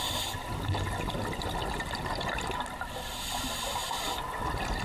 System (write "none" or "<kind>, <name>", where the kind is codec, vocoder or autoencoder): none